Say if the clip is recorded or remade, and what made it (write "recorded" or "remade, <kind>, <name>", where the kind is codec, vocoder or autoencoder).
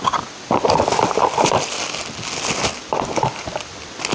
recorded